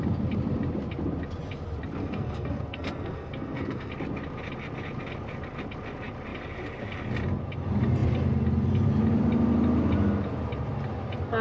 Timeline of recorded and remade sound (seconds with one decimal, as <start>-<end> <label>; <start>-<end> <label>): 0.0-2.0 recorded; 2.0-3.9 remade; 3.9-11.4 recorded